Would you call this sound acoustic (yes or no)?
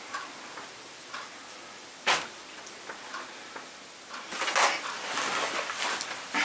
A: yes